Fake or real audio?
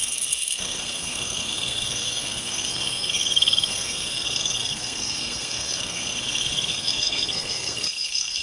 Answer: fake